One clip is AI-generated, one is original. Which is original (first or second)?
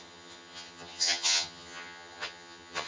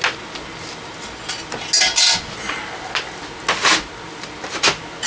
second